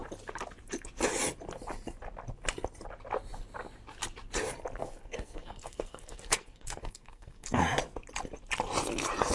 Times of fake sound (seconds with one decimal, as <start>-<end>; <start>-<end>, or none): 4.8-7.6